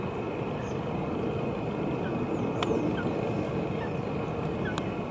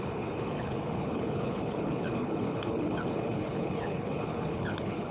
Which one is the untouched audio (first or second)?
first